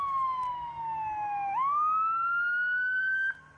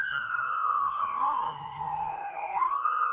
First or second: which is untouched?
first